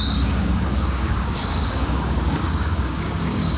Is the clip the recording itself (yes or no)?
no